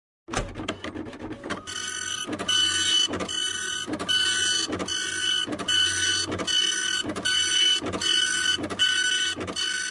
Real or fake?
real